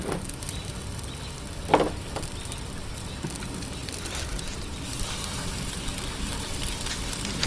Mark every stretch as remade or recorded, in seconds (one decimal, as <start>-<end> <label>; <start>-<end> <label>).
0.0-3.8 recorded; 3.8-6.6 remade; 6.6-7.5 recorded

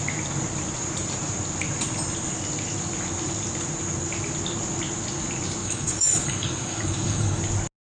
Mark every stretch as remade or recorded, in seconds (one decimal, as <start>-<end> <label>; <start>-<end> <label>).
0.0-5.6 recorded; 5.6-7.4 remade; 7.4-8.0 recorded

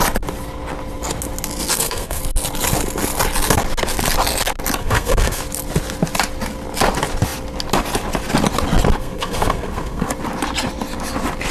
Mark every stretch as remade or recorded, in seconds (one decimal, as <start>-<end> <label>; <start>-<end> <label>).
0.0-1.7 recorded; 1.7-2.2 remade; 2.2-4.8 recorded; 4.8-5.4 remade; 5.4-9.0 recorded; 9.0-10.1 remade; 10.1-11.5 recorded

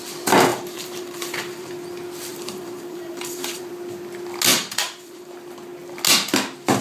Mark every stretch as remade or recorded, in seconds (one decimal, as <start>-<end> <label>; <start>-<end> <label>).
0.0-0.5 recorded; 0.5-1.7 remade; 1.7-2.3 recorded; 2.3-3.7 remade; 3.7-4.5 recorded; 4.5-5.3 remade; 5.3-6.8 recorded

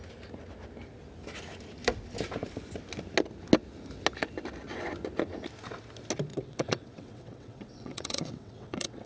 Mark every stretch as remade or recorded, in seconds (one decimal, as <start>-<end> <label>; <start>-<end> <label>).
0.0-6.3 recorded; 6.3-9.1 remade